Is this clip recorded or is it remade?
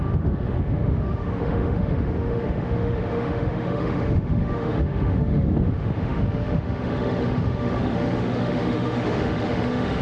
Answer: remade